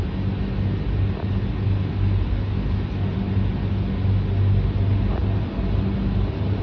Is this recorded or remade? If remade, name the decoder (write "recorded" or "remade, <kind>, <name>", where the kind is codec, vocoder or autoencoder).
recorded